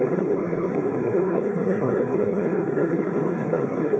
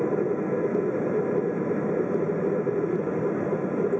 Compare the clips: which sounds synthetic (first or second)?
first